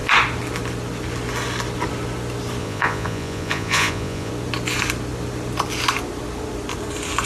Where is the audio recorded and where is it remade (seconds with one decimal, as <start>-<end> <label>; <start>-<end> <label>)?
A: 0.0-2.6 recorded; 2.6-4.3 remade; 4.3-7.3 recorded